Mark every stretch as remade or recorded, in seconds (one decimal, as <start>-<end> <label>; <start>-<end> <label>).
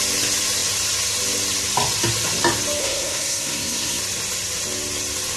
0.0-2.8 recorded; 2.8-4.0 remade; 4.0-5.4 recorded